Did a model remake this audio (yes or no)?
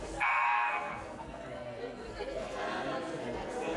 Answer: yes